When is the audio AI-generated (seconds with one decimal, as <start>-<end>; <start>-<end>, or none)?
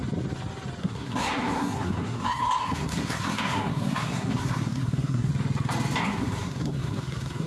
0.8-5.3; 6.0-7.5